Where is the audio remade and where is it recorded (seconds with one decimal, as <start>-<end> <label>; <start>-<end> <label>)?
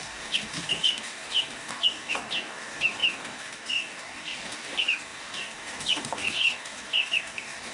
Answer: 0.0-7.7 remade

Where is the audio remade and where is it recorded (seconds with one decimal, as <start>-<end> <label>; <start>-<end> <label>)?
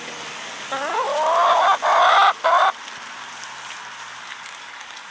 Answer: 0.0-1.1 remade; 1.1-4.2 recorded; 4.2-5.1 remade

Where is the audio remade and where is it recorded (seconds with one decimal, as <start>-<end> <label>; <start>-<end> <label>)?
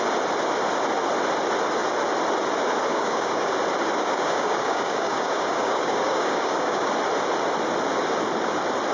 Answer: 0.0-2.9 recorded; 2.9-3.5 remade; 3.5-4.0 recorded; 4.0-6.9 remade; 6.9-8.9 recorded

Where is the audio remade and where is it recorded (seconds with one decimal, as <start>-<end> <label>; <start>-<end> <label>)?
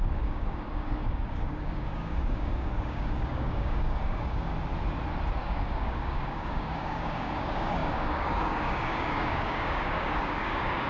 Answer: 0.0-4.5 remade; 4.5-5.4 recorded; 5.4-10.9 remade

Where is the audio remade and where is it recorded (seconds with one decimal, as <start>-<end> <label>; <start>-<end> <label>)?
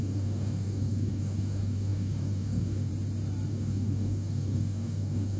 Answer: 0.0-2.9 remade; 2.9-3.5 recorded; 3.5-5.4 remade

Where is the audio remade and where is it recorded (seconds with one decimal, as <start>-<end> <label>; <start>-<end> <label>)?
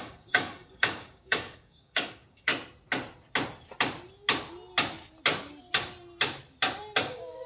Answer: 0.0-2.5 remade; 2.5-7.0 recorded; 7.0-7.5 remade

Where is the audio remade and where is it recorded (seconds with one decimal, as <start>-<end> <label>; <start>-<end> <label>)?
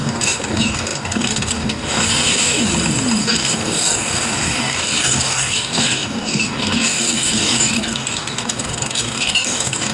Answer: 0.0-2.7 remade; 2.7-3.2 recorded; 3.2-9.9 remade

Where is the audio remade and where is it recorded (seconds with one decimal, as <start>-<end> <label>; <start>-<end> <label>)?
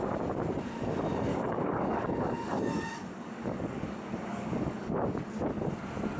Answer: 0.0-1.3 recorded; 1.3-4.9 remade; 4.9-6.2 recorded